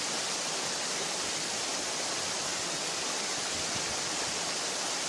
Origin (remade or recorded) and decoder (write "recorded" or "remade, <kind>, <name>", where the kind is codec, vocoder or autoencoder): recorded